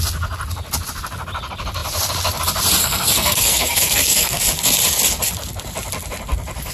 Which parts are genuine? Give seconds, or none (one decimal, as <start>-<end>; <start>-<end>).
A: 0.0-2.8; 4.4-6.7